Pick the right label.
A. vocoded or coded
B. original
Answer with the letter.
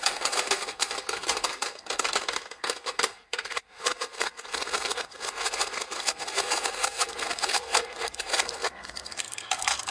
A